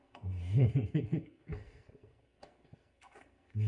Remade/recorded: remade